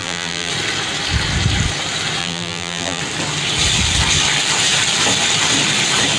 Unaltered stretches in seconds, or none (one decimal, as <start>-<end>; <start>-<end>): 0.5-2.2; 3.0-6.2